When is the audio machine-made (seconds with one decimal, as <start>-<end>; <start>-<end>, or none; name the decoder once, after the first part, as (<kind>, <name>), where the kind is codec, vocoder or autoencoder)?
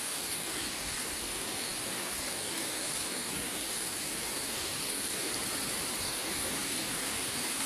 0.0-5.3 (codec, DAC); 6.0-7.7